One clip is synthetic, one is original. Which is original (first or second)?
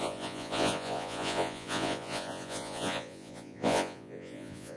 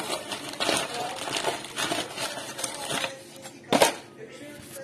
second